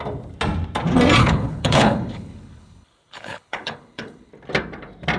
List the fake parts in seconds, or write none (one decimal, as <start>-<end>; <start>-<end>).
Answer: 1.2-4.3

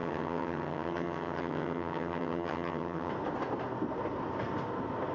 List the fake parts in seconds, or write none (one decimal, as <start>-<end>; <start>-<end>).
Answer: 0.0-3.1

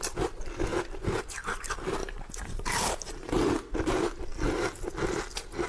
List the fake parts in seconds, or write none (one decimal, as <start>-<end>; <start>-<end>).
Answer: 2.0-3.3

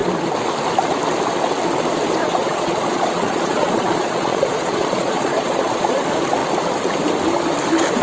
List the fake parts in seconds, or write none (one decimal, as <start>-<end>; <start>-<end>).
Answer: 2.2-6.0

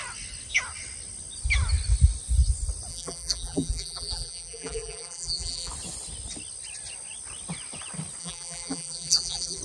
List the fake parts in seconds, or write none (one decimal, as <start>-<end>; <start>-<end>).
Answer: 2.9-5.7; 8.2-9.6